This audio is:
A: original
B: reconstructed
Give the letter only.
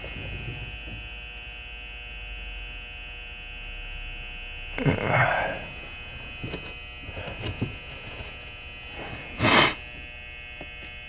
A